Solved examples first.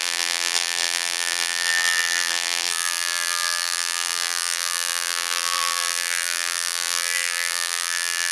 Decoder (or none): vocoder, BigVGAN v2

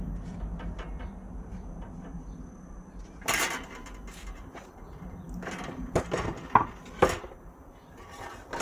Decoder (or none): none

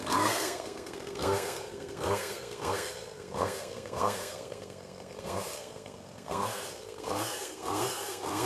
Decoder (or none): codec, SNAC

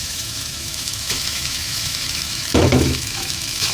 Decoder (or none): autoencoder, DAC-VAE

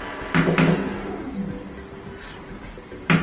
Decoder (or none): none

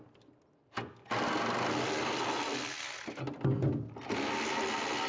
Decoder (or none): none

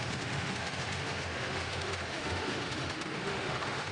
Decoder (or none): autoencoder, DAC-VAE